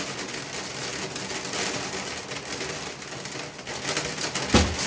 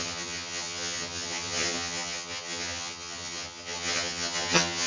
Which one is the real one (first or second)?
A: first